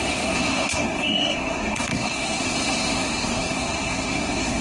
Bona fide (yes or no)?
no